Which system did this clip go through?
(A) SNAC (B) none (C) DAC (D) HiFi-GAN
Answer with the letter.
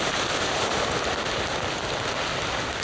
B